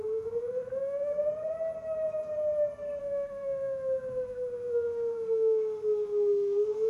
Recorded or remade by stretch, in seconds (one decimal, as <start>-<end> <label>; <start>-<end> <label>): 0.0-1.1 remade; 1.1-3.0 recorded; 3.0-6.9 remade